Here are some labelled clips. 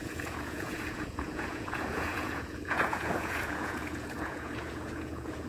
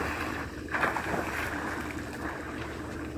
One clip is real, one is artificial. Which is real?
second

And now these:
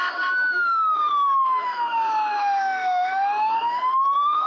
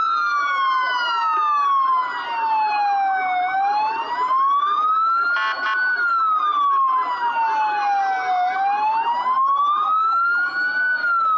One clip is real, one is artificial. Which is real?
second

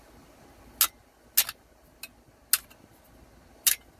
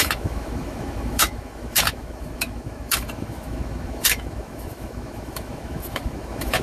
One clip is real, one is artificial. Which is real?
first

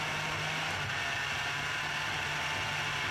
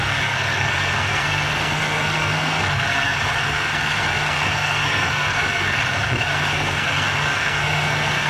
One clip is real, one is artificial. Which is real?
first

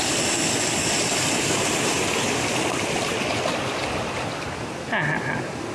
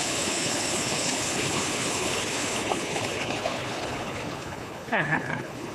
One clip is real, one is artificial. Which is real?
first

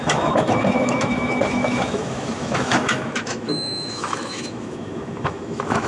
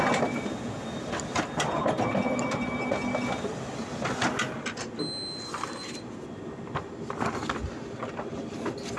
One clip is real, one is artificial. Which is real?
second